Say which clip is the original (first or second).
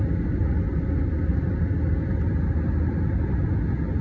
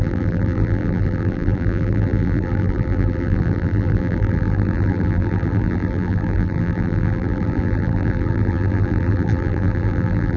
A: first